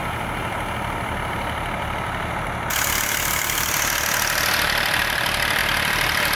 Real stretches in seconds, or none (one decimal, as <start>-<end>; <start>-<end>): 0.0-6.4